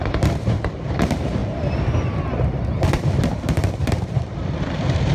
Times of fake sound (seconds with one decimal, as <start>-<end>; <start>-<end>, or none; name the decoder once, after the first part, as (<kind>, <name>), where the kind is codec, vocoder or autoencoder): 0.0-5.1 (vocoder, BigVGAN v2)